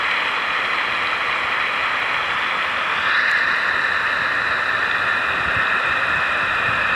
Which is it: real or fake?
real